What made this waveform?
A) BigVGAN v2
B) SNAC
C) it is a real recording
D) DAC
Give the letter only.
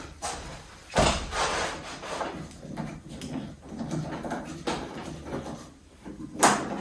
C